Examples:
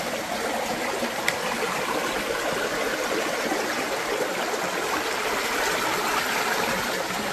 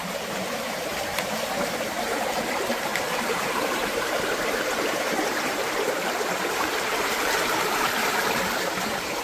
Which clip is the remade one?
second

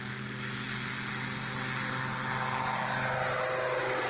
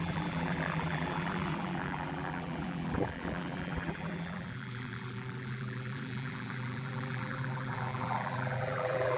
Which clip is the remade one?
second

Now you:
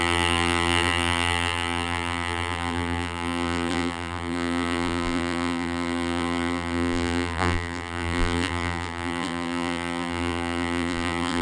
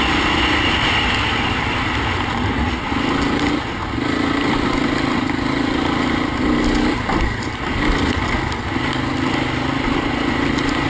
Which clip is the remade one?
first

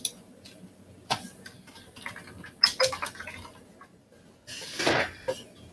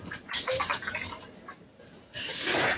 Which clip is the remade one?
second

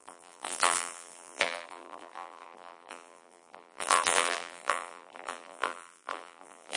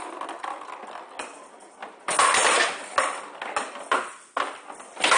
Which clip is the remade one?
first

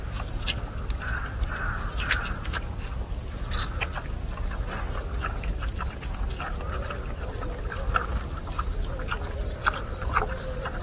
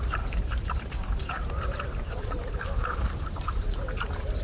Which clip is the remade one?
second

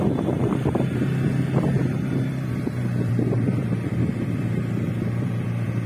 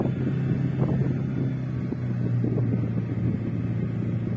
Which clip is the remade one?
first